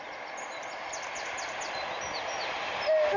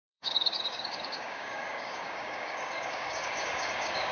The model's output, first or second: second